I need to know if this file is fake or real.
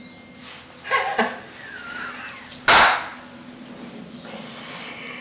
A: real